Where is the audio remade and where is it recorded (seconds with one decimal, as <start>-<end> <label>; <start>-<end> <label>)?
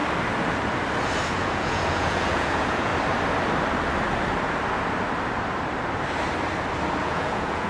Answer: 0.0-1.3 recorded; 1.3-2.9 remade; 2.9-7.0 recorded; 7.0-7.7 remade